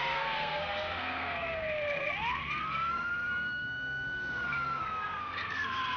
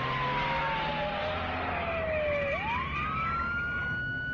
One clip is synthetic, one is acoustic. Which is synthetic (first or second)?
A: first